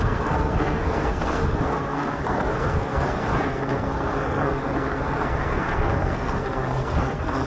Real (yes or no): no